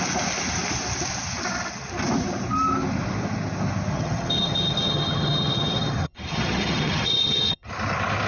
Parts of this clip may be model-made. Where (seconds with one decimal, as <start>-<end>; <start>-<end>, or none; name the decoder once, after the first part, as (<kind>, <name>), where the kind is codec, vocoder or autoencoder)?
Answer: 3.9-7.7 (vocoder, HiFi-GAN)